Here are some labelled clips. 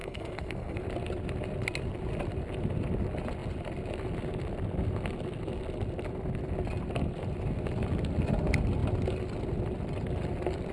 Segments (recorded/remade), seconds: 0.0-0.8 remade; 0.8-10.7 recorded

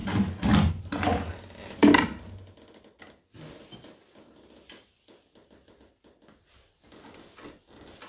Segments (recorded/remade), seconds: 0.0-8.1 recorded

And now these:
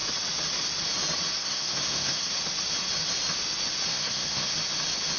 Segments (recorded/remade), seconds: 0.0-1.4 recorded; 1.4-2.3 remade; 2.3-3.9 recorded; 3.9-4.5 remade; 4.5-5.2 recorded